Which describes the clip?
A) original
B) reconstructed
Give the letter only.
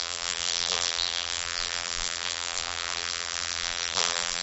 B